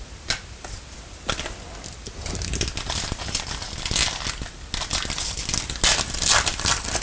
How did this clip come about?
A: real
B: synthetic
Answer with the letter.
A